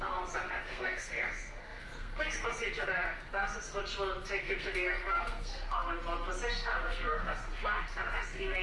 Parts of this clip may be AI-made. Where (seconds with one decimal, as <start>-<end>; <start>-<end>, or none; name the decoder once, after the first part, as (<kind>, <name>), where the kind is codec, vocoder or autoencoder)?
0.0-3.8 (codec, SNAC); 4.4-6.0; 6.5-8.6

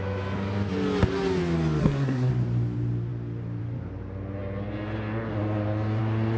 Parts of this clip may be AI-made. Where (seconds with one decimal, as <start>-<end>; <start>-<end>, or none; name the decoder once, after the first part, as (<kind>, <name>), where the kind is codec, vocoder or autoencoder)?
1.8-2.3 (codec, SNAC)

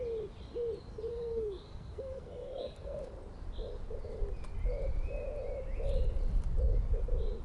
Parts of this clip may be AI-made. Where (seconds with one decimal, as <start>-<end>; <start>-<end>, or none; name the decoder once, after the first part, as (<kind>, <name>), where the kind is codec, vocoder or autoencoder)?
1.1-3.1 (codec, SNAC)

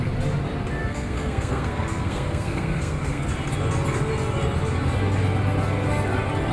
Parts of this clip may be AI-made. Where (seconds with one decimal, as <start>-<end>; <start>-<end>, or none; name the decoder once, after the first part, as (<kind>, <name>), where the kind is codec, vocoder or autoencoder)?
0.8-3.3 (codec, SNAC)

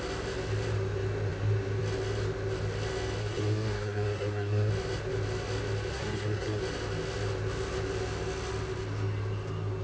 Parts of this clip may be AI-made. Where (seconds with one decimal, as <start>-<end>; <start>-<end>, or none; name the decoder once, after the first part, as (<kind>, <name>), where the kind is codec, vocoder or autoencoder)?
3.2-4.7 (codec, SNAC); 5.9-6.6

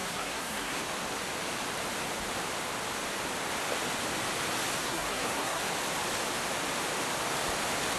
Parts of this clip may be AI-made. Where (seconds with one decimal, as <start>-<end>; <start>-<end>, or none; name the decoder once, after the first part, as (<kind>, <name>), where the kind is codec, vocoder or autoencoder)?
0.0-0.8 (codec, SNAC); 4.8-5.6

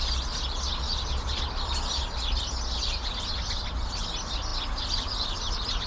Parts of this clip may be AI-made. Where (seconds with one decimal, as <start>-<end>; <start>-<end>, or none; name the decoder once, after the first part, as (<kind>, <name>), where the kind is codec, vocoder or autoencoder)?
none

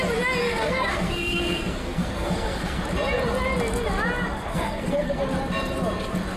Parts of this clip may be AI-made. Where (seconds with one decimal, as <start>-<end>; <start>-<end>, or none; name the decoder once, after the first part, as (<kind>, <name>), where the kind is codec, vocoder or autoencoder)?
0.4-2.8 (codec, SNAC); 4.5-5.2